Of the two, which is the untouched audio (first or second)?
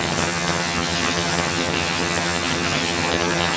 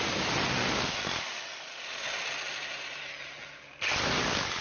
second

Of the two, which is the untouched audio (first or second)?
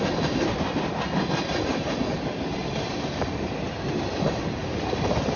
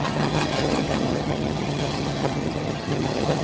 first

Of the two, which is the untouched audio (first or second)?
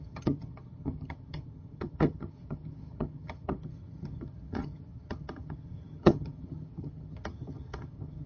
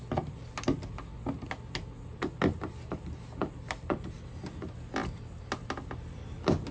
second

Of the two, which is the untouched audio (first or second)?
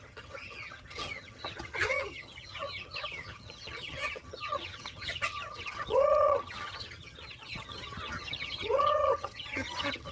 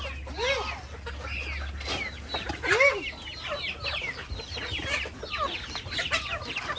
second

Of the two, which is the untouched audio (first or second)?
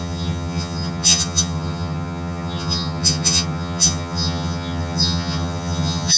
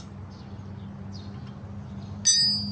second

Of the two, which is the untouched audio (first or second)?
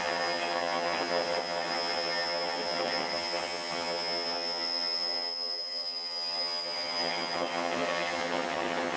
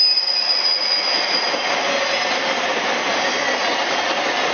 second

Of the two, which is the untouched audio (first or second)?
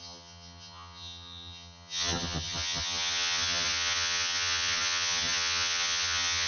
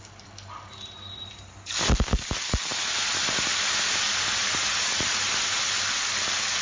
second